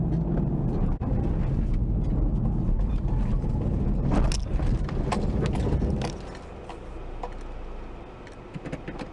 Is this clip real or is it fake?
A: real